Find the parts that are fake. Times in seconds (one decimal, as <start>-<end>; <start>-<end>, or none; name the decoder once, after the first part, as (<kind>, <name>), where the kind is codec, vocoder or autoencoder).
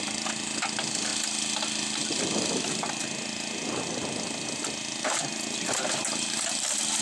none